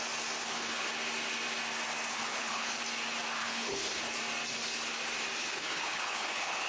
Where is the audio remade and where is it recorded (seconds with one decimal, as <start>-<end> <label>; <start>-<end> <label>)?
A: 0.0-0.4 recorded; 0.4-0.9 remade; 0.9-2.1 recorded; 2.1-2.8 remade; 2.8-3.4 recorded; 3.4-4.0 remade; 4.0-5.4 recorded; 5.4-6.7 remade